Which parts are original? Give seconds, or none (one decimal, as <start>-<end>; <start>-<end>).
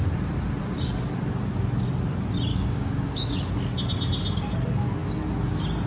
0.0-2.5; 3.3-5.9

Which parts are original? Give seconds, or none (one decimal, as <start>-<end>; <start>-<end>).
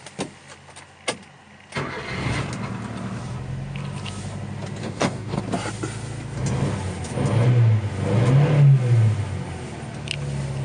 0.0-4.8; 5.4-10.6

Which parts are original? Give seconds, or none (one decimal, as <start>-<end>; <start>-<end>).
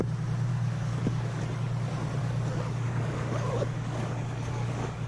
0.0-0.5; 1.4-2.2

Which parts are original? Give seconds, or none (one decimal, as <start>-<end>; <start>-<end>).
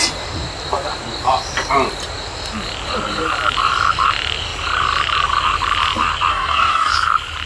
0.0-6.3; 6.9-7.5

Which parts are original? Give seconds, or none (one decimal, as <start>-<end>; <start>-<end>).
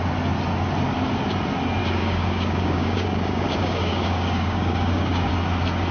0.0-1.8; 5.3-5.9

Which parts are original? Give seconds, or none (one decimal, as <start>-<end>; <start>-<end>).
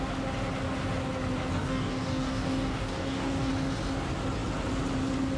0.0-1.5; 3.5-5.4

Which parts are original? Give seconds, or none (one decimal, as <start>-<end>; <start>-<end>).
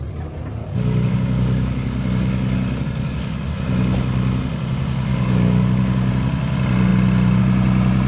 0.0-0.6; 3.5-5.1; 6.1-8.1